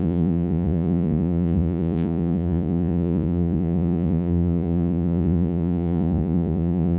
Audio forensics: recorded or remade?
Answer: remade